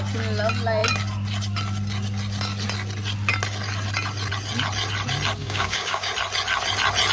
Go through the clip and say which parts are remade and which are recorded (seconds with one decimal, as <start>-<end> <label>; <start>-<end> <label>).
0.0-5.4 recorded; 5.4-6.1 remade; 6.1-7.1 recorded